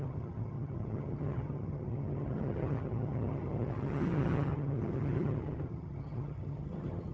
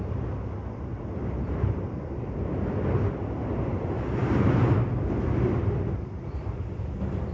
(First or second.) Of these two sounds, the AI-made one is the first